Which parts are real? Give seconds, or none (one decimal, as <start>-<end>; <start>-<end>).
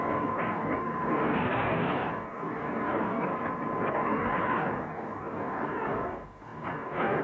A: 3.3-3.9